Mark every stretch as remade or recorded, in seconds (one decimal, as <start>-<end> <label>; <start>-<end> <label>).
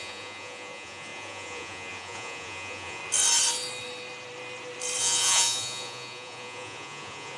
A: 0.0-3.0 remade; 3.0-5.0 recorded; 5.0-7.4 remade